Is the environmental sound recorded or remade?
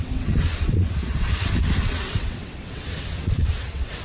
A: remade